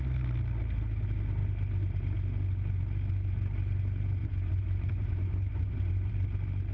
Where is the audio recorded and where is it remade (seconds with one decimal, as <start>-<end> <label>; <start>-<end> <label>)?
0.0-4.2 recorded; 4.2-6.1 remade; 6.1-6.7 recorded

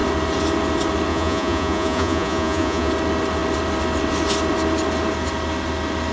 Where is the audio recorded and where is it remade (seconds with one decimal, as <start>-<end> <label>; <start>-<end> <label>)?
0.0-1.1 recorded; 1.1-2.9 remade; 2.9-6.1 recorded

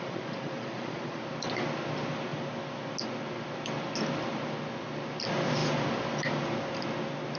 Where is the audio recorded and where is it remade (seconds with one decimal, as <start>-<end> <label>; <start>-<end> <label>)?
0.0-1.2 remade; 1.2-7.4 recorded